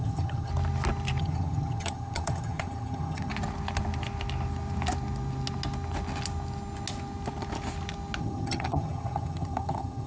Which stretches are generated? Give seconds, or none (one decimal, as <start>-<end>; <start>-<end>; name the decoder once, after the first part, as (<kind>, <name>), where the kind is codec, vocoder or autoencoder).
0.0-0.5 (vocoder, HiFi-GAN); 1.2-3.3; 8.2-10.1